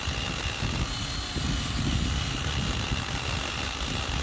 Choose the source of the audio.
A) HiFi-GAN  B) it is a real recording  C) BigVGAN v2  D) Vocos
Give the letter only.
B